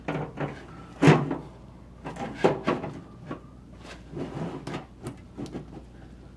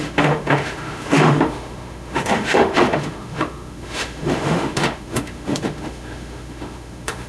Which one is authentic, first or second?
first